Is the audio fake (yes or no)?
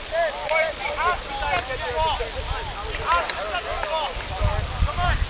no